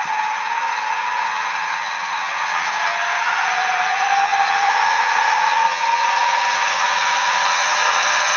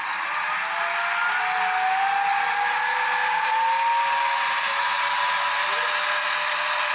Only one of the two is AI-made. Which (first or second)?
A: first